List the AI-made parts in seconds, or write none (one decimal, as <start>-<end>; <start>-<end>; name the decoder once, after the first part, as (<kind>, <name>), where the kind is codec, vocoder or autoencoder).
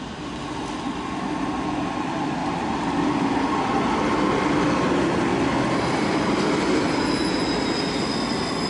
5.3-6.6 (vocoder, BigVGAN v2)